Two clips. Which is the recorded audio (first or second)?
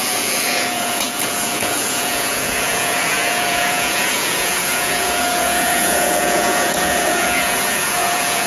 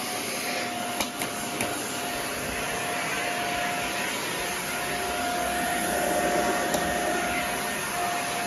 second